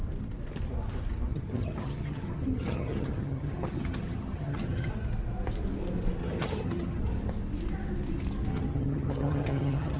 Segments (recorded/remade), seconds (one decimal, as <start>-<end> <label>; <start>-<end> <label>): 0.0-1.3 recorded; 1.3-4.9 remade; 4.9-6.2 recorded; 6.2-7.0 remade; 7.0-8.5 recorded; 8.5-10.0 remade

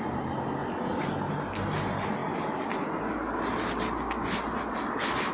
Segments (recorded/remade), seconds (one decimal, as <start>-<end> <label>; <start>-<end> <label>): 0.0-5.3 recorded

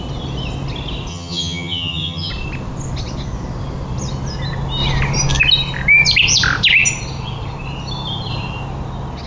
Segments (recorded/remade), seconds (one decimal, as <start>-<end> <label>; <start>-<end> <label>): 0.0-1.1 recorded; 1.1-2.3 remade; 2.3-9.3 recorded